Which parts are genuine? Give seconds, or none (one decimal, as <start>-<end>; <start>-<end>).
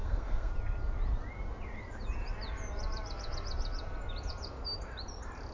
0.5-5.5